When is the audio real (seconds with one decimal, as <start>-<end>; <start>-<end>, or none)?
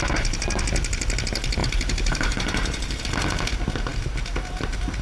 0.0-1.6; 3.0-5.0